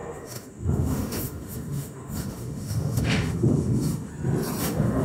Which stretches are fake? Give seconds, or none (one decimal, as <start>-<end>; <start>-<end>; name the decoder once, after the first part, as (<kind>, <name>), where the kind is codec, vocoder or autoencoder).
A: 0.0-4.1 (autoencoder, DAC-VAE); 4.6-5.0